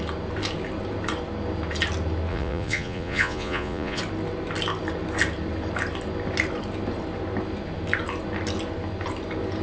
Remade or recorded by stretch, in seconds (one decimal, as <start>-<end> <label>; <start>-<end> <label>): 0.0-2.3 recorded; 2.3-4.0 remade; 4.0-9.6 recorded